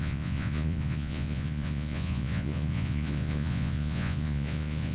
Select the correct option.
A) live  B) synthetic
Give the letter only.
B